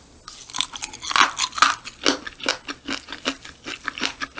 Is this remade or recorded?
recorded